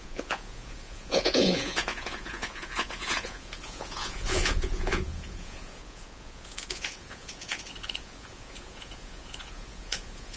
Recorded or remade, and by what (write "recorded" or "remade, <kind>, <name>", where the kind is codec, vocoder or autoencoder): remade, vocoder, Vocos